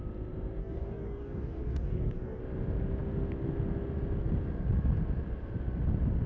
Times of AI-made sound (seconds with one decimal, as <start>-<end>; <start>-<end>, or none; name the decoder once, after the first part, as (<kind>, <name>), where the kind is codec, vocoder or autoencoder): 0.6-2.4 (codec, DAC)

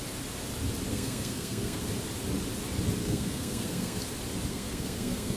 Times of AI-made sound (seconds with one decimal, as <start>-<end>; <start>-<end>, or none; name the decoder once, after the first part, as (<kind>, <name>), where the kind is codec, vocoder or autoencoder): 0.9-1.8 (codec, SNAC); 3.0-4.0; 4.5-5.4

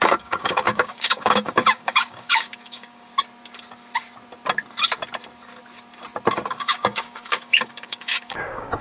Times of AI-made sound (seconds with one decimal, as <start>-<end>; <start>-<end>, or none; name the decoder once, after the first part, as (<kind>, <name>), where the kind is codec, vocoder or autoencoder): 0.0-3.1 (codec, DAC); 6.5-8.8

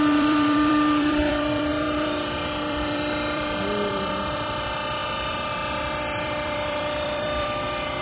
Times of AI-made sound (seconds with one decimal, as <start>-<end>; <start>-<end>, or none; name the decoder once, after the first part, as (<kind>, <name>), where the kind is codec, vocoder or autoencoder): 0.0-8.0 (vocoder, BigVGAN v2)

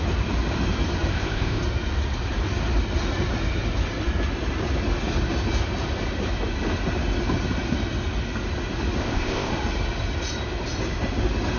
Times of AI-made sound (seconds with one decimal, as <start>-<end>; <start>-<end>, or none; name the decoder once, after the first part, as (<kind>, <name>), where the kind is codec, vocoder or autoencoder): 1.1-1.6 (codec, ZipCodec); 9.0-9.5

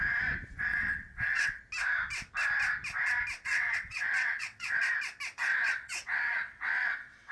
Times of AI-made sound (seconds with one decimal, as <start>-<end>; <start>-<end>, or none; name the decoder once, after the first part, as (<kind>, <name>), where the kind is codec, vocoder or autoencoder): 0.7-1.6 (vocoder, WaveNeXt); 3.5-4.8; 5.5-7.3